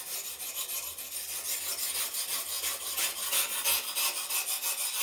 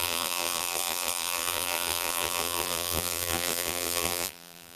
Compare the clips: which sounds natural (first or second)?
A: first